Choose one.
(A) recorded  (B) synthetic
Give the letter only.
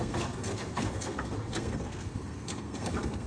B